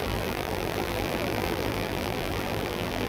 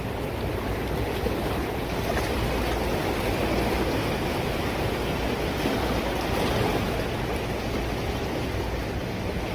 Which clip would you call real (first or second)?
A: second